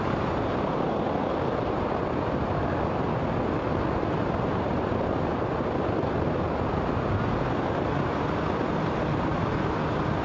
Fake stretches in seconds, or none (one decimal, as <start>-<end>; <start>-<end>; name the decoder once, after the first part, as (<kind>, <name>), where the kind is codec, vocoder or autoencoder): none